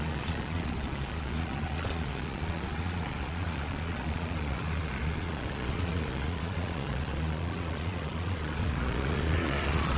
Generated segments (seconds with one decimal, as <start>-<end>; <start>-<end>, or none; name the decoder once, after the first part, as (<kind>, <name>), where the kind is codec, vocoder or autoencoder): 0.0-10.0 (vocoder, Vocos)